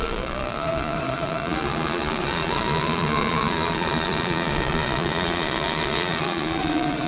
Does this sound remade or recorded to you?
remade